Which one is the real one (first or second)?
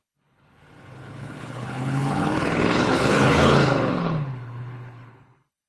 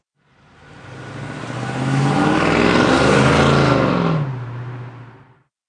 second